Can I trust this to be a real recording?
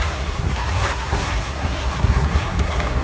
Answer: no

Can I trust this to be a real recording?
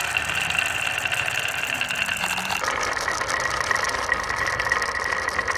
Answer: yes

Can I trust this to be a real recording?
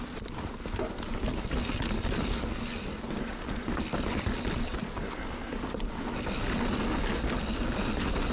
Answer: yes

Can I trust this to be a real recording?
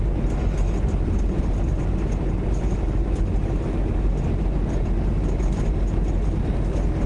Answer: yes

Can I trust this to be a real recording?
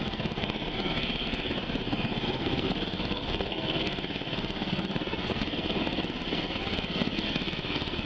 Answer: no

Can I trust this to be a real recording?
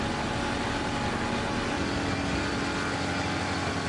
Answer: yes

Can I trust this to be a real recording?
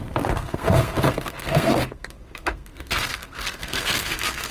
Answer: no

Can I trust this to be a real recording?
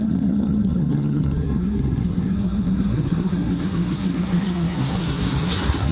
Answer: no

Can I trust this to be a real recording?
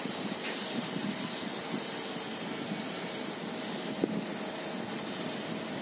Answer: yes